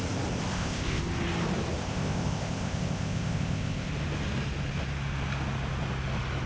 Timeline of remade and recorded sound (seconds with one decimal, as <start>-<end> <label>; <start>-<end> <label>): 0.0-0.5 recorded; 0.5-1.0 remade; 1.0-1.8 recorded; 1.8-3.9 remade; 3.9-6.5 recorded